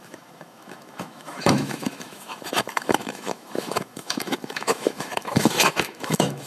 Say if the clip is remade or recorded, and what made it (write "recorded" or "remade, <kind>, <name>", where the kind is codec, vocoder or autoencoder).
remade, autoencoder, DAC-VAE